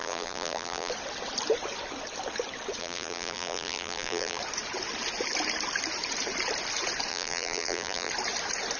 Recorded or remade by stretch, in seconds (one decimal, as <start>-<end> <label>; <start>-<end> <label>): 0.0-0.9 remade; 0.9-2.8 recorded; 2.8-4.4 remade; 4.4-7.1 recorded; 7.1-8.1 remade; 8.1-8.8 recorded